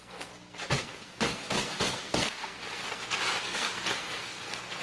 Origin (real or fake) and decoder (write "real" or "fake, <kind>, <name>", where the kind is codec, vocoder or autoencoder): fake, codec, SNAC